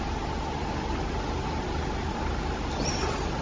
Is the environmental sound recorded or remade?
recorded